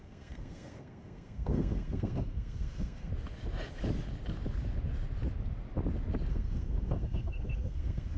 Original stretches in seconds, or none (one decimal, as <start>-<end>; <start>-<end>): 3.1-6.3